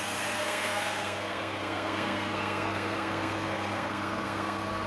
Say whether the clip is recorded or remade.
remade